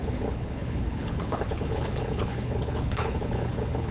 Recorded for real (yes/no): no